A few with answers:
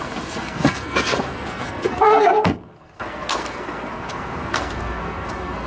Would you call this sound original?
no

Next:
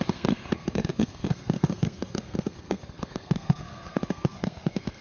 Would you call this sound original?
no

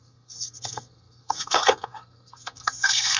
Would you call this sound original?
no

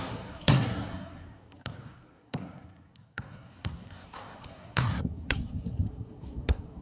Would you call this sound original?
no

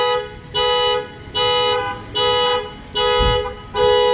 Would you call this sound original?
yes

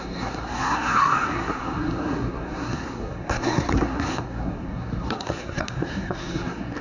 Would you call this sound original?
no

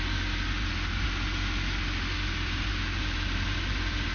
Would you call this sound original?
yes